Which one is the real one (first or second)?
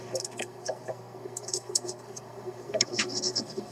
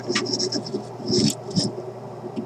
second